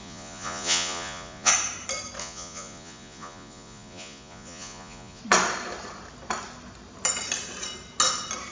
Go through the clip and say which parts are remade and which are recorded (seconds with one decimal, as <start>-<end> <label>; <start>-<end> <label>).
0.0-1.5 remade; 1.5-2.2 recorded; 2.2-5.2 remade; 5.2-8.5 recorded